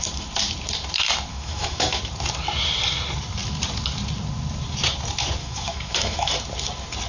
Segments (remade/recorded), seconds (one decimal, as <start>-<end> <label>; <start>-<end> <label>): 0.0-1.3 recorded; 1.3-2.0 remade; 2.0-5.4 recorded; 5.4-6.3 remade; 6.3-7.1 recorded